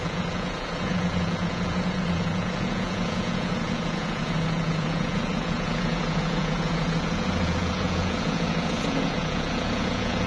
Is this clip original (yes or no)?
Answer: no